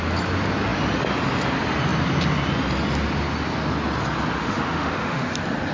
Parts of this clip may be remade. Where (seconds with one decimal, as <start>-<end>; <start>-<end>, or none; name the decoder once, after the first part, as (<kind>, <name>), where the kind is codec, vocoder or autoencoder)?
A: 4.4-5.3 (autoencoder, DAC-VAE)

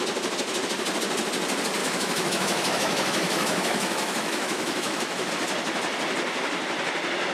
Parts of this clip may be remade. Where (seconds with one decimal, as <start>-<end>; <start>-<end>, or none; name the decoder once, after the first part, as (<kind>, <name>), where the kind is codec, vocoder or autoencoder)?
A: 1.8-5.3 (autoencoder, DAC-VAE)